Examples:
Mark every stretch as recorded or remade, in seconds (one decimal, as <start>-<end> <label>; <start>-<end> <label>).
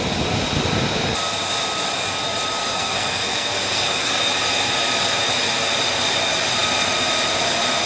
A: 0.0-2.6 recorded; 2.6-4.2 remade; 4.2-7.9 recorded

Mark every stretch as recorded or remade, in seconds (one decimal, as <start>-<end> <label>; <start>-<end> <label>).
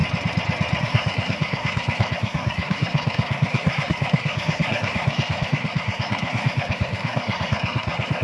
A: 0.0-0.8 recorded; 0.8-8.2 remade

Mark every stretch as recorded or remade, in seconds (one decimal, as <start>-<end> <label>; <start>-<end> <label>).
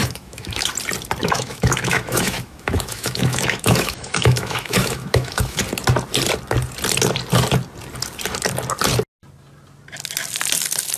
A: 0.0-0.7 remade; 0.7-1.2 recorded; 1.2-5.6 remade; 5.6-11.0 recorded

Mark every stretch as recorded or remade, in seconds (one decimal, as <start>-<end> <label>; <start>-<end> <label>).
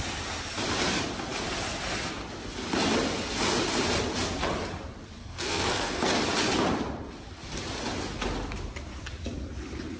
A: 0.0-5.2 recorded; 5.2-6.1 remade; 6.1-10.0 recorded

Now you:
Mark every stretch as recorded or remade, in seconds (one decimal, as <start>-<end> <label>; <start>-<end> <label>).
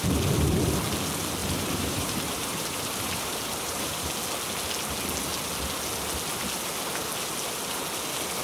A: 0.0-1.4 recorded; 1.4-4.1 remade; 4.1-8.4 recorded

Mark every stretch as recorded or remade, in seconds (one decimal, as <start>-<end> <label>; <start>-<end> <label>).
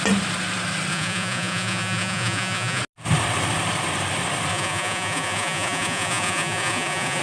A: 0.0-0.9 recorded; 0.9-2.8 remade; 2.8-4.5 recorded; 4.5-7.2 remade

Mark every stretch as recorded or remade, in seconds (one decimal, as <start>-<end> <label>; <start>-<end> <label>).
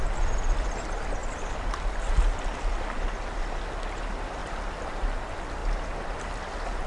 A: 0.0-1.2 recorded; 1.2-3.6 remade; 3.6-4.4 recorded; 4.4-5.0 remade; 5.0-6.9 recorded